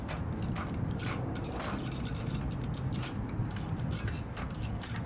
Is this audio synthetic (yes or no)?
no